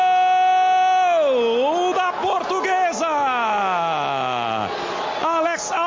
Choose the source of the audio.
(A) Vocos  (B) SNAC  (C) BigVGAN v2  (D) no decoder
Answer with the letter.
D